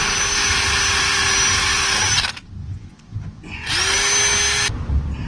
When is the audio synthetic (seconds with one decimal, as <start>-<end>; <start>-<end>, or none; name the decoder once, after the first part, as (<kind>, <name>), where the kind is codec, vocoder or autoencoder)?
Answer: 2.6-3.7 (vocoder, Vocos)